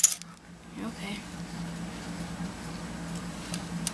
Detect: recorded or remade recorded